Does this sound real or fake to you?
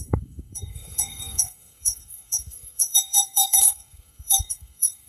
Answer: fake